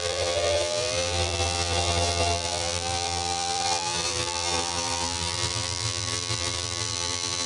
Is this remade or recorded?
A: remade